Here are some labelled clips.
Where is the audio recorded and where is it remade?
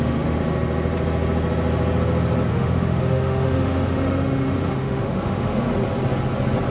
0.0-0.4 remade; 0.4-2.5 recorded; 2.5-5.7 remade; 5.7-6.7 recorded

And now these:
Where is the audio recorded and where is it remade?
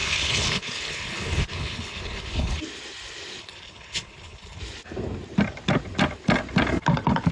0.0-2.6 remade; 2.6-3.4 recorded; 3.4-4.6 remade; 4.6-7.3 recorded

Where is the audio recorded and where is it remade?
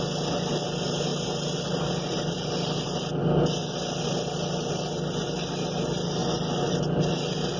0.0-7.6 recorded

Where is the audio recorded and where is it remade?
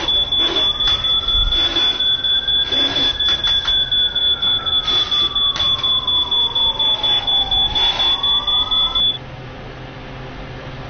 0.0-4.2 recorded; 4.2-4.8 remade; 4.8-10.9 recorded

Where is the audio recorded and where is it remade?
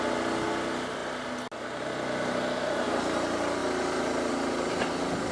0.0-5.3 recorded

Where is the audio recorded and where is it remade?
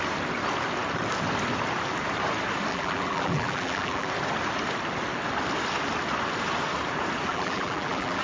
0.0-2.7 recorded; 2.7-4.1 remade; 4.1-7.3 recorded; 7.3-8.2 remade